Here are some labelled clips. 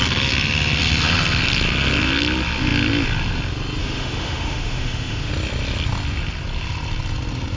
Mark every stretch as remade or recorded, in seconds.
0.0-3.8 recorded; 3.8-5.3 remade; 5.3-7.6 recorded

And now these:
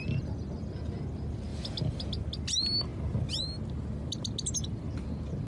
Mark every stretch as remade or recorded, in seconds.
0.0-1.5 recorded; 1.5-2.0 remade; 2.0-5.5 recorded

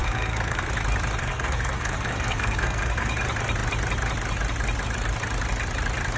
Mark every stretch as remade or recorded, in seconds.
0.0-0.7 remade; 0.7-1.2 recorded; 1.2-3.1 remade; 3.1-6.2 recorded

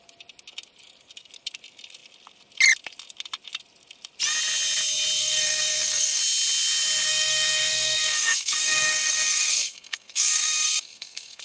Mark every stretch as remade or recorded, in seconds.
0.0-5.2 recorded; 5.2-6.2 remade; 6.2-7.1 recorded; 7.1-11.4 remade

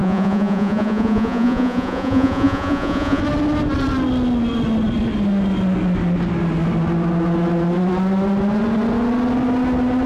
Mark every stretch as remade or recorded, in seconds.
0.0-3.2 remade; 3.2-10.1 recorded

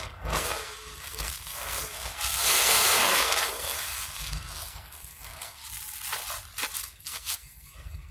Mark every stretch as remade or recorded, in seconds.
0.0-5.6 remade; 5.6-6.8 recorded; 6.8-8.1 remade

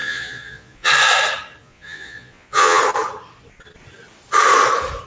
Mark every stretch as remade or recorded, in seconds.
0.0-0.9 remade; 0.9-1.6 recorded; 1.6-2.8 remade; 2.8-5.1 recorded

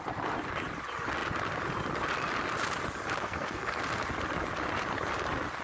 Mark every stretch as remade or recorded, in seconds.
0.0-3.2 recorded; 3.2-3.8 remade; 3.8-5.6 recorded